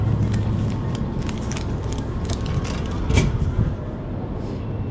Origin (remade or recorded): recorded